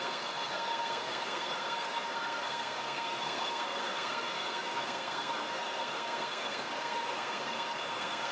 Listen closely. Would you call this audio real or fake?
fake